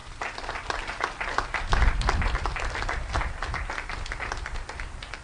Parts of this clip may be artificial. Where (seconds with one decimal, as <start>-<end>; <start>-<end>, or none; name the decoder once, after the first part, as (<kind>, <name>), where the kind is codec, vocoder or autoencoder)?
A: none